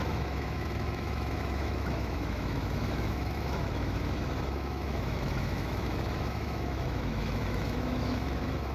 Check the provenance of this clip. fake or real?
fake